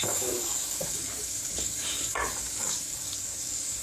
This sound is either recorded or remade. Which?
remade